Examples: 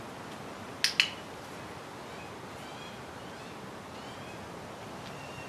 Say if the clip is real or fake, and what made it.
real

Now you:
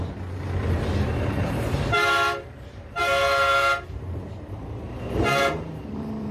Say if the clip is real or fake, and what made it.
fake, vocoder, BigVGAN v2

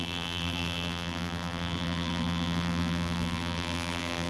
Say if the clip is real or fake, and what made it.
fake, vocoder, BigVGAN v2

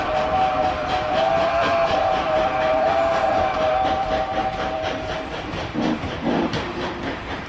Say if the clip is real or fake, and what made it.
fake, vocoder, BigVGAN v2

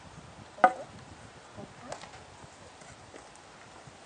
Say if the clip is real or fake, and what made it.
real